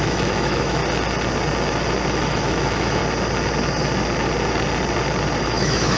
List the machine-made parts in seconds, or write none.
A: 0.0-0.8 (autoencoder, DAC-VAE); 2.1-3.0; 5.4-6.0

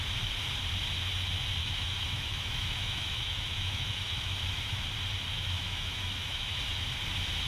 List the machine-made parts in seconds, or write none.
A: 1.6-4.8 (autoencoder, DAC-VAE); 5.3-6.6